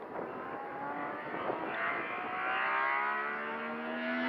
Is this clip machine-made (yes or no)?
no